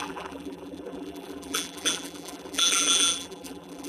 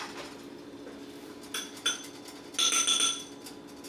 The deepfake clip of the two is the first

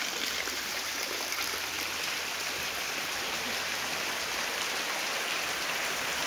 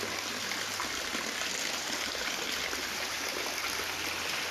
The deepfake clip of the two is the first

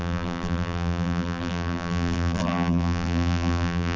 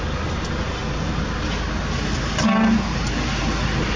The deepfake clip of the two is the first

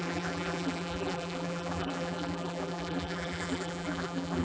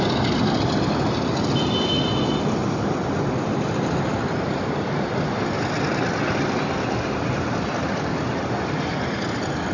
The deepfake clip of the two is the first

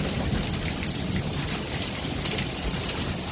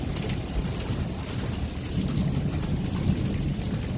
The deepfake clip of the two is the first